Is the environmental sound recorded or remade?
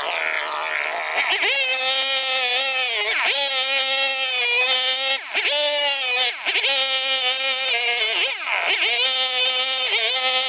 recorded